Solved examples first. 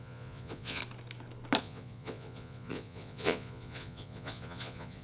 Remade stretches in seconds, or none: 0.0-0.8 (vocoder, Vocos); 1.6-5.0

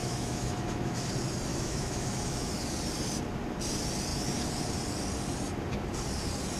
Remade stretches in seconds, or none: 0.0-1.1 (autoencoder, DAC-VAE); 1.5-2.5

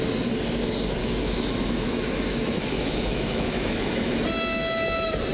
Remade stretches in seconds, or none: 1.0-4.2 (autoencoder, DAC-VAE)